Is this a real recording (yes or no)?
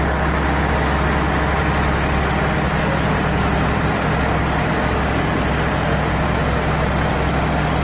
yes